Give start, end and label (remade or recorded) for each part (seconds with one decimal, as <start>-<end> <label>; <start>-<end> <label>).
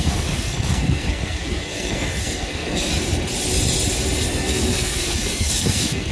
0.0-2.9 remade; 2.9-4.3 recorded; 4.3-6.1 remade